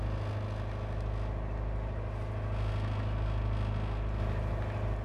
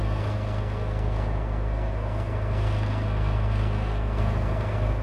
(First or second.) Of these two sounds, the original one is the first